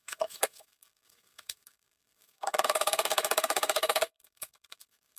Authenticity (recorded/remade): remade